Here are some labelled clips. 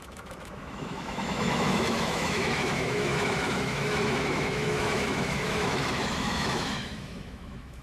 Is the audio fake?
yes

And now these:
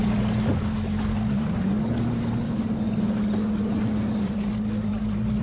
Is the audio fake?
no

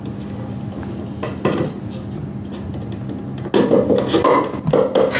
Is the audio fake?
no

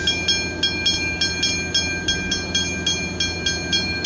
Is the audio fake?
no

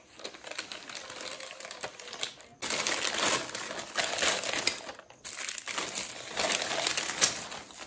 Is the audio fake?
no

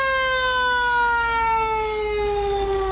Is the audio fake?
yes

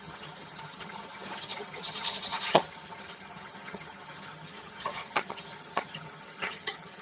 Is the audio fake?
yes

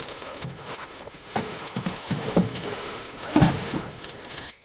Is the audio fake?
yes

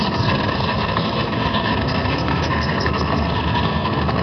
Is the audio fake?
yes